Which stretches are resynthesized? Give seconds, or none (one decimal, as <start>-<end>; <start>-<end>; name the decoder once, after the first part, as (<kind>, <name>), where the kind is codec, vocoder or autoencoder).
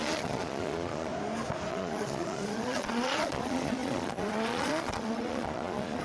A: 0.0-1.1 (vocoder, Vocos); 1.7-6.0